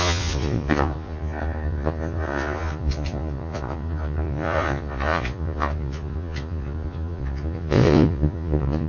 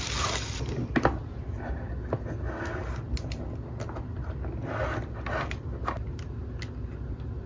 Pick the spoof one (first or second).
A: first